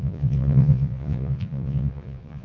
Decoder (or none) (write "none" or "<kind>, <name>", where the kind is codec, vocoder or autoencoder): vocoder, Vocos